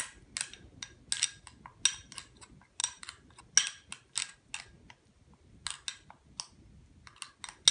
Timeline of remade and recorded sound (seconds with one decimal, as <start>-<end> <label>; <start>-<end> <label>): 0.0-2.8 recorded; 2.8-3.4 remade; 3.4-7.7 recorded